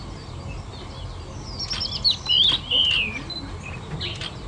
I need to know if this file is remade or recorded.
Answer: recorded